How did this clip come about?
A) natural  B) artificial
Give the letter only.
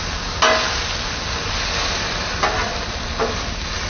A